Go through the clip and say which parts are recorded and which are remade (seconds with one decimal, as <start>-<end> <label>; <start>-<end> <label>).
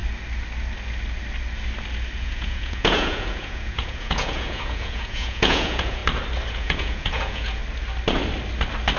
0.0-2.2 recorded; 2.2-6.0 remade; 6.0-6.5 recorded; 6.5-7.6 remade; 7.6-9.0 recorded